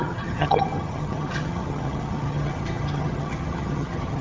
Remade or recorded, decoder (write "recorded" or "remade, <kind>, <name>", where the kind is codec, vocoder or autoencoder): remade, vocoder, HiFi-GAN